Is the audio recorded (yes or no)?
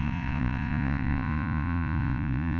no